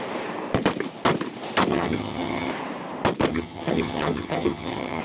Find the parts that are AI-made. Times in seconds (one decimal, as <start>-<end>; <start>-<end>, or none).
1.7-2.5; 3.3-5.0

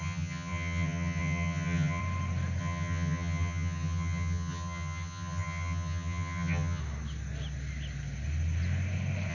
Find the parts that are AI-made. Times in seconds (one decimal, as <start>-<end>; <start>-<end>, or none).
0.0-2.0; 2.6-6.8